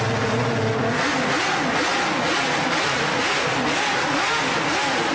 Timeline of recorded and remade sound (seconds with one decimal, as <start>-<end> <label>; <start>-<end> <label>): 0.0-5.1 recorded